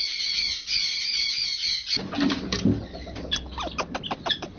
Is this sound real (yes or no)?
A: yes